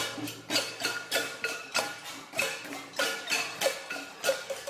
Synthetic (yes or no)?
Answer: no